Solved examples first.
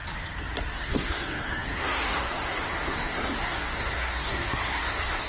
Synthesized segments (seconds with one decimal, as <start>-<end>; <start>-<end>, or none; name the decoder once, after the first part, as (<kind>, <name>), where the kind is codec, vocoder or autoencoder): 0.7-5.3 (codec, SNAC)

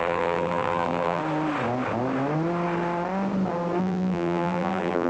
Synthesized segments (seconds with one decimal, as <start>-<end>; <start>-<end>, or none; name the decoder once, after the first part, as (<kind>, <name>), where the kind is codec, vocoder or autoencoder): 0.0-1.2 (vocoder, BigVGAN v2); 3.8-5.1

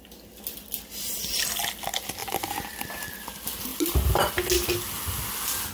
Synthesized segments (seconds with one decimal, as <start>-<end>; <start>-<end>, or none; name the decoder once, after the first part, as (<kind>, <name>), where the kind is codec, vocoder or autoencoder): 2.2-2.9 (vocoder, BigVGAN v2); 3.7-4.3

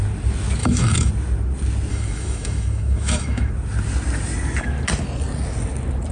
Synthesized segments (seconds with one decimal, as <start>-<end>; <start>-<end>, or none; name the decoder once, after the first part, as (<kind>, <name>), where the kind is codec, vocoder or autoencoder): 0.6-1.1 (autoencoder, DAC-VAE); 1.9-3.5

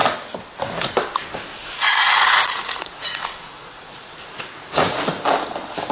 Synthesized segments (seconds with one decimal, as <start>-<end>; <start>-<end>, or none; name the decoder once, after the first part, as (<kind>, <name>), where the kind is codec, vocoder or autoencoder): 1.5-5.0 (vocoder, Vocos)

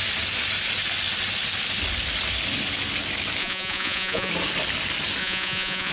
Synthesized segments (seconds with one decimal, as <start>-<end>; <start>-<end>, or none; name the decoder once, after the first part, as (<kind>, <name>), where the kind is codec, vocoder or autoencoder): 3.4-4.3 (vocoder, Vocos); 5.2-5.9